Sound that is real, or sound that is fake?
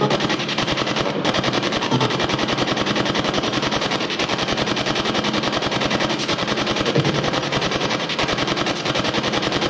fake